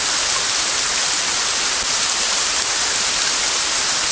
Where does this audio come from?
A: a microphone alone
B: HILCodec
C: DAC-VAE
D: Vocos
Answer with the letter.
A